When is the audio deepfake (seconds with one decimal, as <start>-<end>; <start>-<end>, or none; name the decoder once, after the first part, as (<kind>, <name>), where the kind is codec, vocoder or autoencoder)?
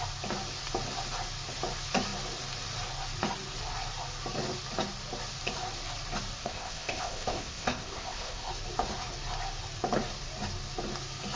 6.4-8.5 (codec, ZipCodec)